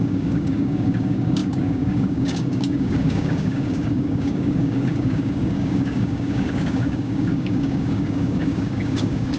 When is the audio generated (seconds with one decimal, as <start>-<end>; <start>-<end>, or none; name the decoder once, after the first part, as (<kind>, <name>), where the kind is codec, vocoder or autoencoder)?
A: 0.0-9.4 (codec, DAC)